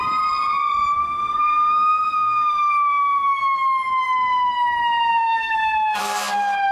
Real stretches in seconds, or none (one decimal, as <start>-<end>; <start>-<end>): 0.0-1.0; 3.4-5.1; 6.0-6.7